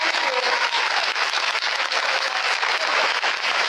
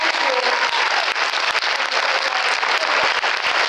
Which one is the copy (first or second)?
first